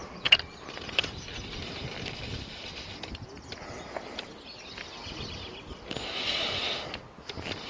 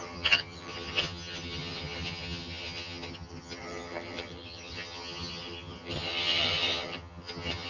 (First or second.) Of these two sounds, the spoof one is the second